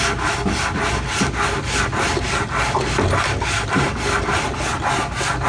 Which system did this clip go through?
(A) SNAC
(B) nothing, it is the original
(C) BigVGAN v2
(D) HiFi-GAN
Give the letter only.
B